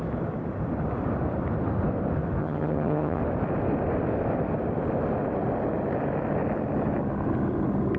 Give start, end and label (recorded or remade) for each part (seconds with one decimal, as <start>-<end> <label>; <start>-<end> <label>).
0.0-2.4 recorded; 2.4-3.2 remade; 3.2-8.0 recorded